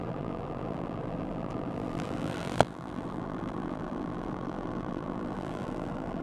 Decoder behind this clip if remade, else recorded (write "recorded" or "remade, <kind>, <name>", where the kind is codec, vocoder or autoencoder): remade, vocoder, BigVGAN v2